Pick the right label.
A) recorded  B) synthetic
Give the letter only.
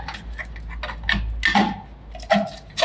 A